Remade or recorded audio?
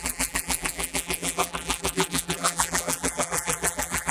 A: remade